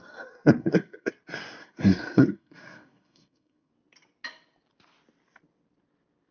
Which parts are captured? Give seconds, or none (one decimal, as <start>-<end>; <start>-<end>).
0.0-0.6; 1.1-1.6; 3.7-6.3